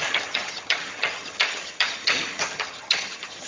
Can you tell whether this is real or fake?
fake